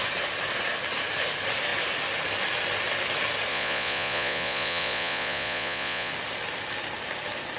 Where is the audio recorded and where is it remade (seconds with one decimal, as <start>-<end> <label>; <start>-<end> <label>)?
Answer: 0.0-3.5 recorded; 3.5-6.1 remade; 6.1-7.6 recorded